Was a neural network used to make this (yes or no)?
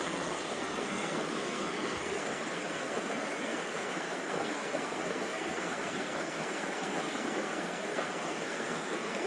yes